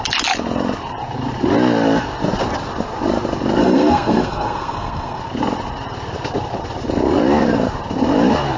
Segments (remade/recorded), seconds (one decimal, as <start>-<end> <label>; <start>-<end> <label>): 0.0-3.6 recorded; 3.6-5.2 remade; 5.2-8.6 recorded